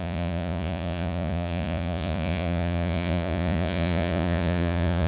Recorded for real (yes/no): no